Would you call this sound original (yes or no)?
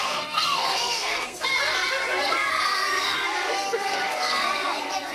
no